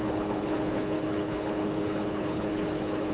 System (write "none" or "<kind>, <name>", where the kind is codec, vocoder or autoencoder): codec, HILCodec